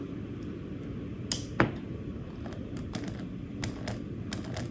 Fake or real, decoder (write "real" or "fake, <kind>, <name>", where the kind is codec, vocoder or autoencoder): real